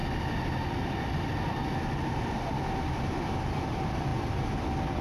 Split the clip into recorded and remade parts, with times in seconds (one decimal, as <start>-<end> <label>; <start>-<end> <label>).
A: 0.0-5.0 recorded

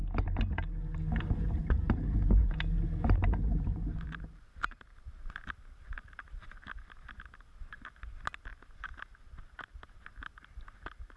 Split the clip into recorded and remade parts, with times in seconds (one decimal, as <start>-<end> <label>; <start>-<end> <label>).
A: 0.0-1.6 recorded; 1.6-5.4 remade; 5.4-11.2 recorded

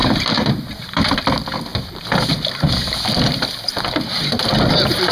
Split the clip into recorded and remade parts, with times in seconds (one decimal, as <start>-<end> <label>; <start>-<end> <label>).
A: 0.0-1.2 remade; 1.2-1.7 recorded; 1.7-4.2 remade; 4.2-5.1 recorded

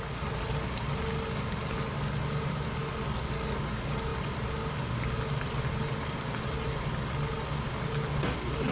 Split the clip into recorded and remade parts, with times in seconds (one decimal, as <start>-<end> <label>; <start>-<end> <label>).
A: 0.0-8.7 recorded